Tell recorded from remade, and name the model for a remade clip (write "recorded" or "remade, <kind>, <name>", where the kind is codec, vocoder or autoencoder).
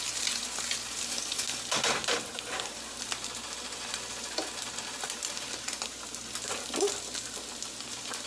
recorded